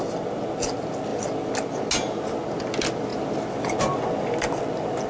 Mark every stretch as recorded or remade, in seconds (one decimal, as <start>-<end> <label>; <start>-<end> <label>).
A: 0.0-5.1 recorded